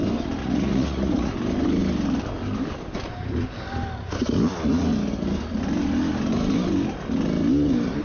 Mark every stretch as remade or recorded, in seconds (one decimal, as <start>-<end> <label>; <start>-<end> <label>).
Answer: 0.0-0.4 recorded; 0.4-1.3 remade; 1.3-8.0 recorded